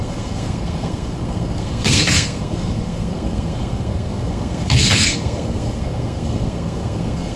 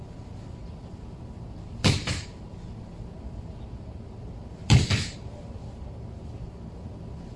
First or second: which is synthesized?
first